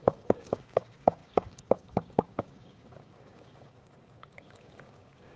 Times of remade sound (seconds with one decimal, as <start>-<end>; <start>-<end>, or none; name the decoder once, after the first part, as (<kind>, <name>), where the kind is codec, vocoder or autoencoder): 0.0-5.4 (codec, DAC)